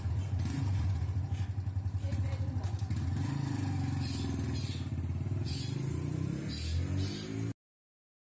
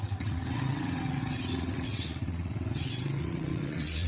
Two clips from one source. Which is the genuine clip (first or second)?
first